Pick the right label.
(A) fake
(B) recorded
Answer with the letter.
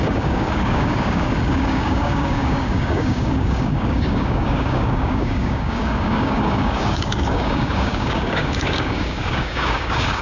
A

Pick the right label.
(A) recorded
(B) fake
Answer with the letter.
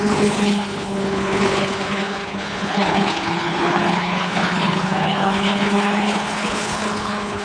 B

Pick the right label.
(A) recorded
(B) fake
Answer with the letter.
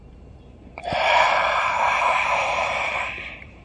B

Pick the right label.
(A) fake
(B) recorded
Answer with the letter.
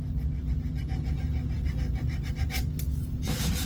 B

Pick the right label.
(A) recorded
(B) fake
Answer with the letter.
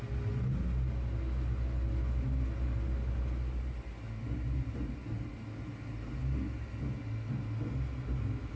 A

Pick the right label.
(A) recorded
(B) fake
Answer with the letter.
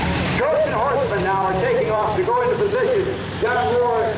B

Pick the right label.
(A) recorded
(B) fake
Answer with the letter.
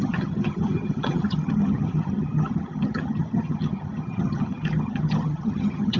B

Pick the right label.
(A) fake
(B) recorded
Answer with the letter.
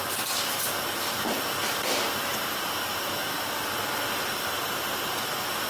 B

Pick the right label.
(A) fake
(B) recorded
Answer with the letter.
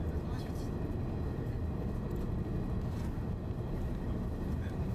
B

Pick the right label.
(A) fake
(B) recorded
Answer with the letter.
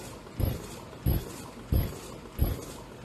B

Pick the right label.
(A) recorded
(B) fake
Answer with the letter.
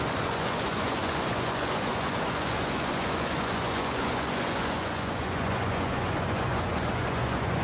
B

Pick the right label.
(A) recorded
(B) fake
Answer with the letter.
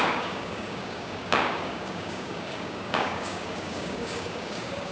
B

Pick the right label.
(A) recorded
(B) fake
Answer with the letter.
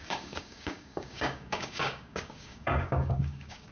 B